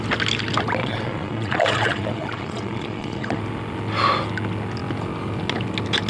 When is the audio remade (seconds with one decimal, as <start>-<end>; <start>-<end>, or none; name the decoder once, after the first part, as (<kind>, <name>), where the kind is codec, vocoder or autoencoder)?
0.8-3.4 (vocoder, Vocos)